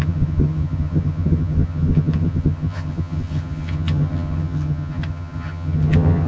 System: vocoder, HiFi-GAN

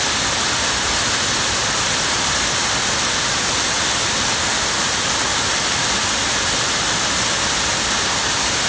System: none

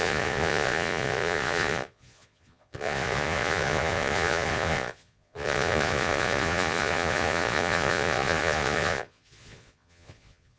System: vocoder, Vocos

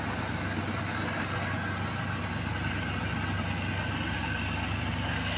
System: none